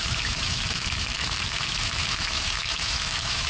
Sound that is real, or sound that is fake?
fake